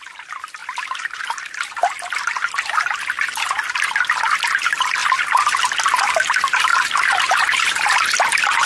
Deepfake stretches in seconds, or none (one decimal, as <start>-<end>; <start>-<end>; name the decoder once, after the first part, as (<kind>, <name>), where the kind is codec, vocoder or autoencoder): 0.0-0.6 (vocoder, BigVGAN v2); 1.2-8.7